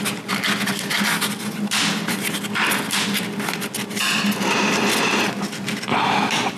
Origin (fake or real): real